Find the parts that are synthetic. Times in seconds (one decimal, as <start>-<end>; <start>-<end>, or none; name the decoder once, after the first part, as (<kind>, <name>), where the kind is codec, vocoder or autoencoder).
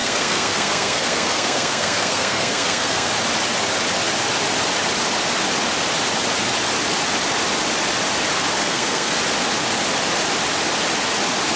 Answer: 0.0-3.1 (codec, SNAC); 8.6-9.2